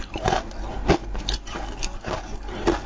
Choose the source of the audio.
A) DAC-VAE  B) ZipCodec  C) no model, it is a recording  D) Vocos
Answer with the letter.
C